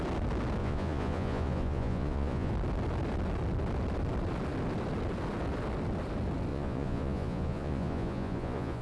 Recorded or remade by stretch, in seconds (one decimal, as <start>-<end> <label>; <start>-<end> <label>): 0.0-0.6 recorded; 0.6-2.5 remade; 2.5-6.5 recorded; 6.5-8.8 remade